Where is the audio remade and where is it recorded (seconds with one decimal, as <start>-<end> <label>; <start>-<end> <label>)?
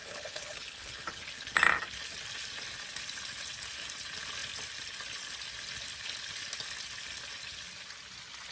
0.0-1.2 remade; 1.2-8.5 recorded